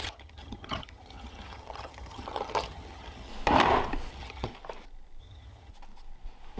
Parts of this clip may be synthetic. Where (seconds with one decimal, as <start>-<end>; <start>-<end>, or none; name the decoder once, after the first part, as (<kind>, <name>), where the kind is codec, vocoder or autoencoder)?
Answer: 0.0-3.3 (vocoder, HiFi-GAN); 4.1-4.5; 5.2-5.7

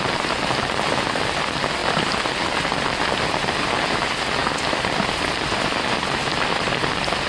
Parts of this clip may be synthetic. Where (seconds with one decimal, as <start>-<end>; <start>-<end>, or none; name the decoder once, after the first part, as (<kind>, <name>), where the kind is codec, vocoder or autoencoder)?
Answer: none

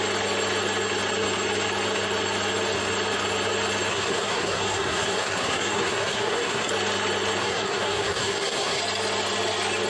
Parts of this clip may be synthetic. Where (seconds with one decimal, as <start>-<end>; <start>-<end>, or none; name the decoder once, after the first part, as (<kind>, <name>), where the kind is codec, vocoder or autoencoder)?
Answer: 3.9-6.7 (codec, SNAC); 7.4-8.8

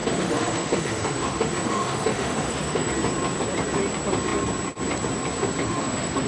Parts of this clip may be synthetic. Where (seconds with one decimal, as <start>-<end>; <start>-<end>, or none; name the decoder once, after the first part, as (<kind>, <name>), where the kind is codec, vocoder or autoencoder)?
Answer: 0.0-2.9 (autoencoder, DAC-VAE); 5.6-6.3

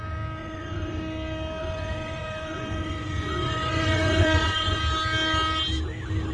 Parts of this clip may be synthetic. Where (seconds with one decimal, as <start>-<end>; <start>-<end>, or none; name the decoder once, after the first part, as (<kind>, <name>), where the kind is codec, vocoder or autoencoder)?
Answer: 0.4-1.0 (vocoder, Vocos); 1.6-4.8

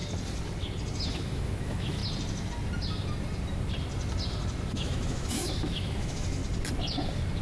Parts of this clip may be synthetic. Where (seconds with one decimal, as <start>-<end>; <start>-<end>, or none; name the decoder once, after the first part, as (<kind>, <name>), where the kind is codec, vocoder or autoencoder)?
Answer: 1.1-2.0 (autoencoder, DAC-VAE); 4.7-6.4

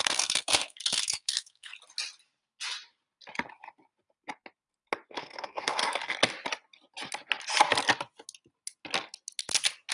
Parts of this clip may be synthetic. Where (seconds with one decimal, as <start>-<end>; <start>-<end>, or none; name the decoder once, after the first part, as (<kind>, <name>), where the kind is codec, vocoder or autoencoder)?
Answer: 0.0-1.7 (codec, SNAC); 5.1-5.8